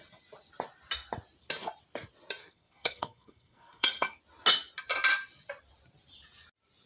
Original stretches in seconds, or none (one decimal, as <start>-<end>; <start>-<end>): 0.0-2.4; 4.2-6.9